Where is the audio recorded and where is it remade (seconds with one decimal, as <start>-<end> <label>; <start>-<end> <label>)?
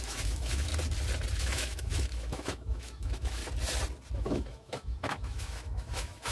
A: 0.0-0.7 remade; 0.7-1.4 recorded; 1.4-3.4 remade; 3.4-4.1 recorded; 4.1-6.3 remade